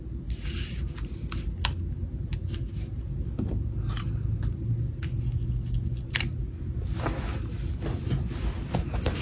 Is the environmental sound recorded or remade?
recorded